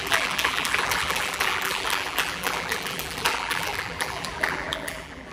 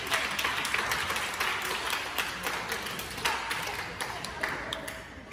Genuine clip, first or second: second